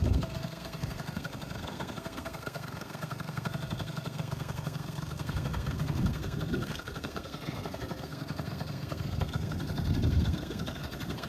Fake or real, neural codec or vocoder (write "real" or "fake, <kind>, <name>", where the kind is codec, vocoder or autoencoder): fake, codec, SNAC